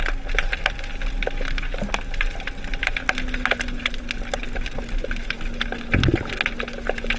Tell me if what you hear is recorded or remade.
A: recorded